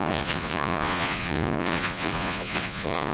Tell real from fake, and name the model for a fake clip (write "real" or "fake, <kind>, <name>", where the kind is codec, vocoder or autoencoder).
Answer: fake, vocoder, Vocos